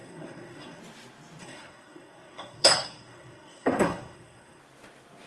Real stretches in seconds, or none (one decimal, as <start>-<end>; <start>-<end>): 0.8-1.4; 4.6-5.3